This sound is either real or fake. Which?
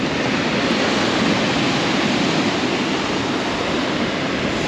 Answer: real